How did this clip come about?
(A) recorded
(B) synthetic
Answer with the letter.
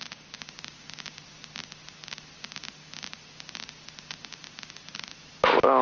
A